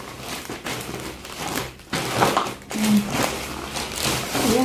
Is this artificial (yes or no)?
yes